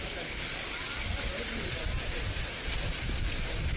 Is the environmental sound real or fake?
real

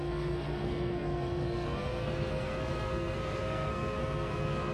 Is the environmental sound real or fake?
fake